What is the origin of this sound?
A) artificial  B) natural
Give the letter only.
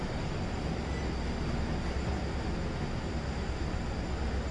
B